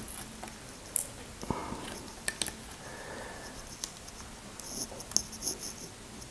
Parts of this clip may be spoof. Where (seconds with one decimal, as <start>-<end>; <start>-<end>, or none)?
none

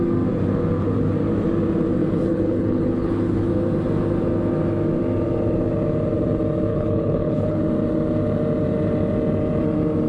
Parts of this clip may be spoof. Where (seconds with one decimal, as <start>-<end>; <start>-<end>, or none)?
2.0-3.5; 6.7-7.6

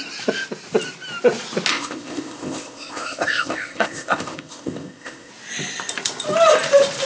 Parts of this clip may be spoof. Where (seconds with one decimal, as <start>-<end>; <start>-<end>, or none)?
1.7-5.3

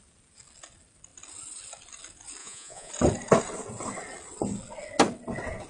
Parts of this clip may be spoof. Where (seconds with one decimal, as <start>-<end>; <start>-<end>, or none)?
2.4-2.9

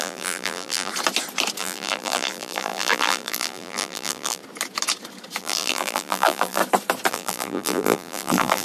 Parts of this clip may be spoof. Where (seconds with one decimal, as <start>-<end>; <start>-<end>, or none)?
0.0-0.9; 1.6-4.4; 5.4-6.6; 7.1-8.6

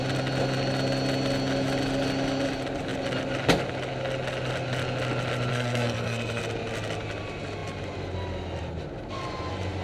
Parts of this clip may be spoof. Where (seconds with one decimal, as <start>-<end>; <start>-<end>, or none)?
5.5-6.4

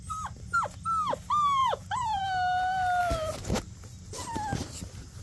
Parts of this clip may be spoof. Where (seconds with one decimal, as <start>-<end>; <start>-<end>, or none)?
1.6-2.2

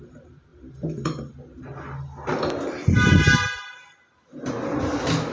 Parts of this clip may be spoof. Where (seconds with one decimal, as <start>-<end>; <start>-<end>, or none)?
none